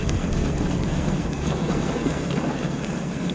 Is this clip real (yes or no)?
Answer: no